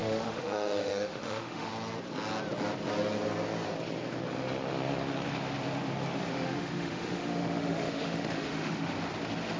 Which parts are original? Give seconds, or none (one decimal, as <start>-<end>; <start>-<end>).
1.7-6.3; 8.9-9.6